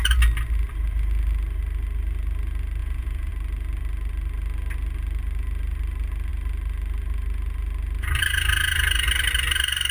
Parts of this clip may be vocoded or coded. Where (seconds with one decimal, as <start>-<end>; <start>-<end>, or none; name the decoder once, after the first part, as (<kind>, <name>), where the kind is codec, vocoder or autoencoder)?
2.8-3.3 (vocoder, Vocos)